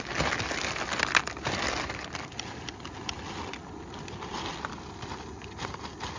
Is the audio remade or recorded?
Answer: recorded